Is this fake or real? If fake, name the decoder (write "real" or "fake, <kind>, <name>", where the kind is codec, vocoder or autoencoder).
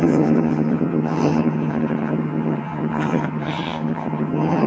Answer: fake, vocoder, HiFi-GAN